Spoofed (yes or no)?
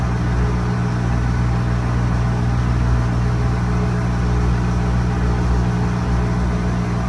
no